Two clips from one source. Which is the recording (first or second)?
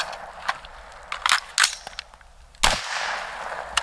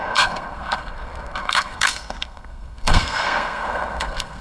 first